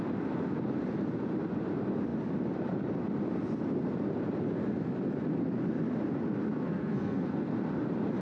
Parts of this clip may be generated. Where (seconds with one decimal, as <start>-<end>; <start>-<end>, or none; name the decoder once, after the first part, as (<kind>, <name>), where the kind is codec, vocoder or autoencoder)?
6.5-7.5 (codec, SNAC)